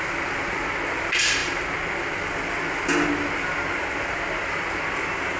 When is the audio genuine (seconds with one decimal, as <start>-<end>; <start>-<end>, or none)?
0.0-5.4